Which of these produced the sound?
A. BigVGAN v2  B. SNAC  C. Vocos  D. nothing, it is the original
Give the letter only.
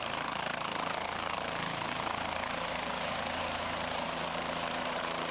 A